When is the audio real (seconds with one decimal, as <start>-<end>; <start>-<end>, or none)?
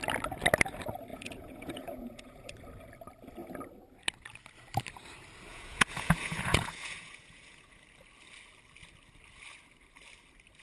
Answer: 0.0-1.1; 2.5-5.5; 7.8-10.6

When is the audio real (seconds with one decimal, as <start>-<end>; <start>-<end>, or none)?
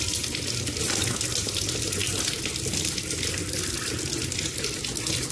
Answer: 0.0-5.3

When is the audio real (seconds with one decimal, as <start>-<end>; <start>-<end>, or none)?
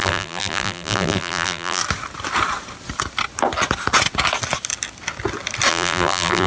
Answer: 1.8-5.7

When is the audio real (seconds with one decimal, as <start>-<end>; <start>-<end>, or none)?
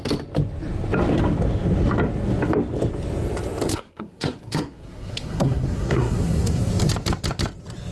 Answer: 0.0-3.7; 6.7-7.9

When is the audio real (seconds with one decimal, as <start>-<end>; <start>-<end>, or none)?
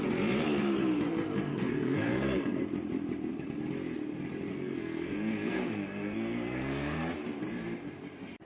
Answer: 0.0-1.5; 2.6-4.5; 7.1-8.5